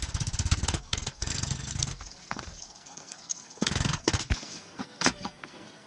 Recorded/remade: remade